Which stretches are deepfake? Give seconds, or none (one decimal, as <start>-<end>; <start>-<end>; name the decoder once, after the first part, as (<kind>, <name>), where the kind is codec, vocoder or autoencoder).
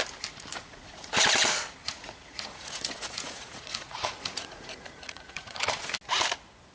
0.5-1.2 (vocoder, Vocos); 1.8-5.8